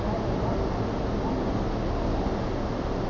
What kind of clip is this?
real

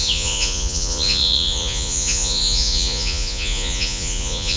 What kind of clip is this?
fake